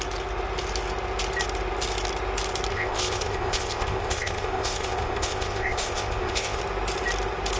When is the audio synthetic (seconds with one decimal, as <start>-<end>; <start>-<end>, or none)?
2.7-6.6